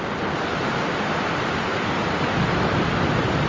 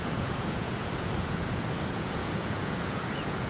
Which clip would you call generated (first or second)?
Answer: second